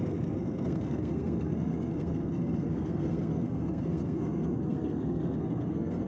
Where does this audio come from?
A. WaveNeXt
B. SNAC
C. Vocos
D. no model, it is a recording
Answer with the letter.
B